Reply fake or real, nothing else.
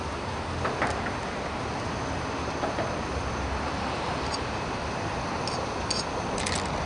real